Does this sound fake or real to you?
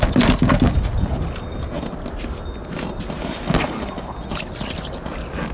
real